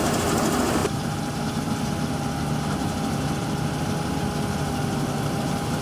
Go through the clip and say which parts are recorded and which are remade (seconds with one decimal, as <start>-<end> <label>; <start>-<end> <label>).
0.0-0.8 recorded; 0.8-1.4 remade; 1.4-5.8 recorded